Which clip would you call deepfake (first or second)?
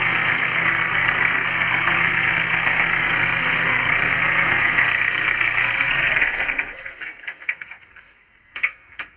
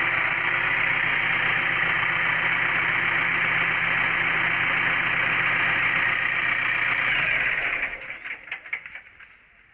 first